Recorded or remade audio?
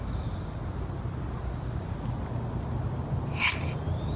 recorded